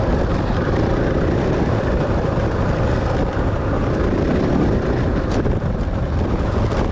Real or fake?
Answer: fake